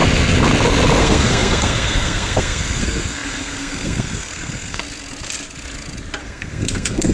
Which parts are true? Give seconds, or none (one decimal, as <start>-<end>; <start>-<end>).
0.0-1.0; 4.8-6.2